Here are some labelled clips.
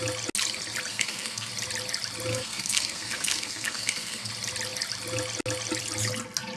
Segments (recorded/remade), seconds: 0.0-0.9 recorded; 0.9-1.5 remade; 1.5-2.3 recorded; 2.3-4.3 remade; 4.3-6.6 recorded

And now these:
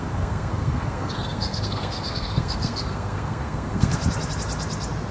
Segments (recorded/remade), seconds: 0.0-4.0 remade; 4.0-5.1 recorded

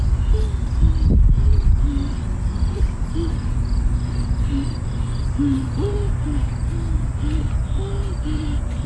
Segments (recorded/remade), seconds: 0.0-8.9 recorded

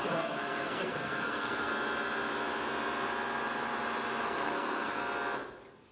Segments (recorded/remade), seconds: 0.0-1.7 remade; 1.7-4.2 recorded; 4.2-5.0 remade; 5.0-5.9 recorded

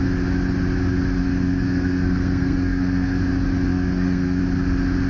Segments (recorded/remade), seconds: 0.0-1.2 recorded; 1.2-3.2 remade; 3.2-3.7 recorded; 3.7-4.4 remade; 4.4-5.1 recorded